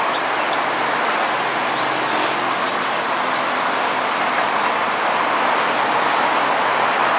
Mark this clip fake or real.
real